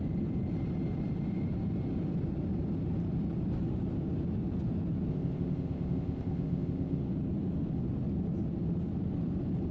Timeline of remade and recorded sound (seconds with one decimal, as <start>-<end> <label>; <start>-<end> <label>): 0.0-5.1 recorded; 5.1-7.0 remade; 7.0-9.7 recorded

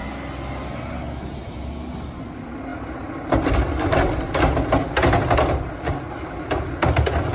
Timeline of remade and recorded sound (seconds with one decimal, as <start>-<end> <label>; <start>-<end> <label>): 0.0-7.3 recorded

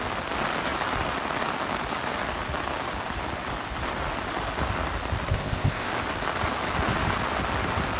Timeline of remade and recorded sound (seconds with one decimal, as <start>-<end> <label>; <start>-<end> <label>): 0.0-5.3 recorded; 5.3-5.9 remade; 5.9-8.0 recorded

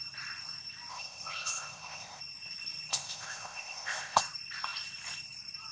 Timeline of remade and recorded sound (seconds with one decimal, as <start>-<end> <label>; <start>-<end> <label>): 0.0-0.9 recorded; 0.9-2.2 remade; 2.2-2.9 recorded; 2.9-4.2 remade; 4.2-5.7 recorded

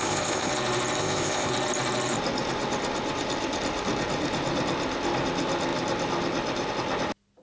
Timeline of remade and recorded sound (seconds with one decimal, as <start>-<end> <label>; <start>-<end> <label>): 0.0-0.5 remade; 0.5-1.0 recorded; 1.0-1.5 remade; 1.5-7.4 recorded

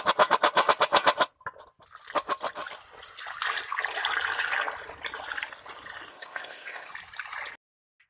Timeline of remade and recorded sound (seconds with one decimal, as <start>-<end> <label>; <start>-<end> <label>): 0.0-6.1 recorded; 6.1-6.9 remade; 6.9-8.1 recorded

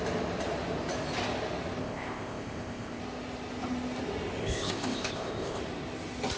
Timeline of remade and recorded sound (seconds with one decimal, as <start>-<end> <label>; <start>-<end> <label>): 0.0-1.8 recorded; 1.8-3.0 remade; 3.0-4.4 recorded; 4.4-5.6 remade; 5.6-6.4 recorded